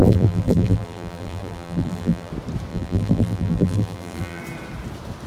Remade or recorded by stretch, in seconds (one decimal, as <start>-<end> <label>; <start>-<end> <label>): 0.0-2.3 remade; 2.3-2.7 recorded; 2.7-4.4 remade; 4.4-5.3 recorded